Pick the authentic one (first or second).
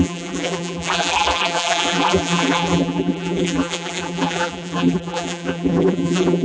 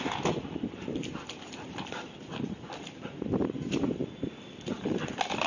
second